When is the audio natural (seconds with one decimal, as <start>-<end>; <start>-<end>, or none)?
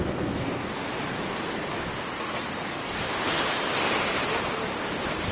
0.6-2.2; 2.8-5.3